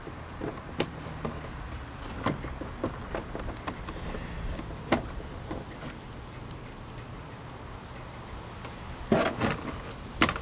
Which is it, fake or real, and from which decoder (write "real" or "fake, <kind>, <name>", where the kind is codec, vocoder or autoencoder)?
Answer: real